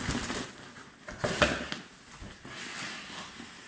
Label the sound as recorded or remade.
recorded